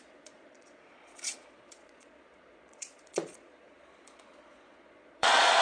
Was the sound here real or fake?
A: fake